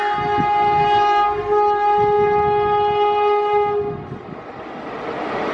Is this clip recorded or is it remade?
recorded